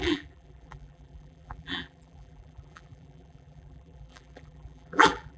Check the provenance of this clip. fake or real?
fake